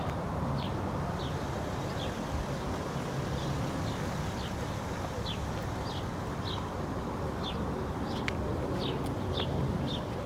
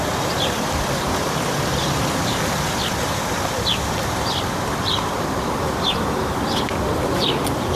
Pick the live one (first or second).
first